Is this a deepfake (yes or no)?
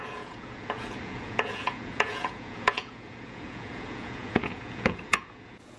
yes